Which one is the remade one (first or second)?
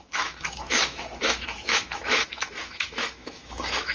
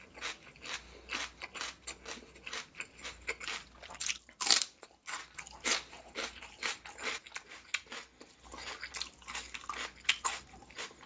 first